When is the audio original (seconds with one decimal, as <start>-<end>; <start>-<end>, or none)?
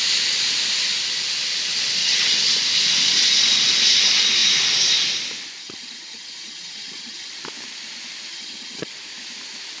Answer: 0.0-2.0; 2.5-5.6; 7.3-8.3; 8.9-9.8